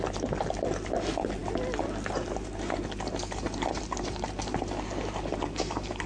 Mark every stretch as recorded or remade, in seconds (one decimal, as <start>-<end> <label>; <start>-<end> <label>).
0.0-6.1 recorded